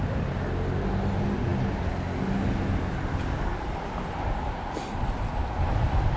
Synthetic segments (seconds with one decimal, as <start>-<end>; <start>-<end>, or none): none